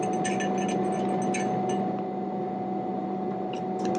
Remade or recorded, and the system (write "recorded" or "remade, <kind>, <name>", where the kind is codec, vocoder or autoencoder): recorded